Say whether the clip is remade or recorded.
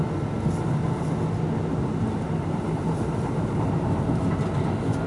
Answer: recorded